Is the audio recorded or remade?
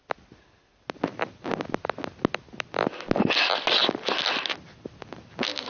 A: recorded